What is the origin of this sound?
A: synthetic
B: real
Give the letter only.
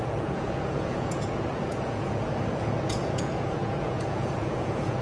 A